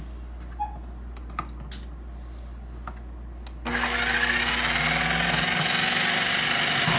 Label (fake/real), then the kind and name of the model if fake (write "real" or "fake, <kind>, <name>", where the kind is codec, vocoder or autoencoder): real